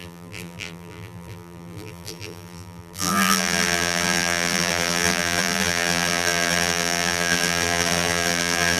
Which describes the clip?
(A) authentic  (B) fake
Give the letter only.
B